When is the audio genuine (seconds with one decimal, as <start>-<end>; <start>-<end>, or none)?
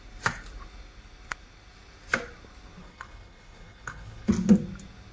0.0-2.8; 4.3-5.1